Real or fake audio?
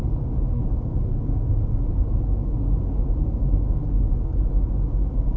real